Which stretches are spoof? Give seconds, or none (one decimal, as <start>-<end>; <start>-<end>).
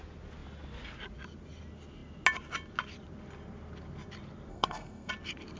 4.5-5.1